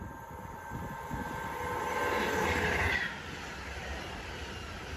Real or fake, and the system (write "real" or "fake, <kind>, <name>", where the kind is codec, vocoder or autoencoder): real